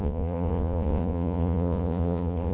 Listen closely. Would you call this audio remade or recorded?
remade